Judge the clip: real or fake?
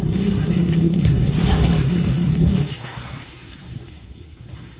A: fake